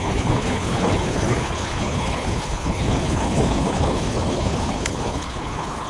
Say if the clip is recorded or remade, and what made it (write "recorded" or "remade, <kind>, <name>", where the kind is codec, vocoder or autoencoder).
remade, codec, HILCodec